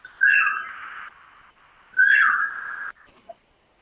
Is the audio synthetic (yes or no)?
no